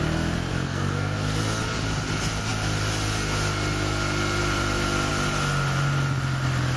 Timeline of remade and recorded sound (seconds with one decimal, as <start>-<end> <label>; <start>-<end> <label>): 0.0-0.5 recorded; 0.5-1.4 remade; 1.4-6.8 recorded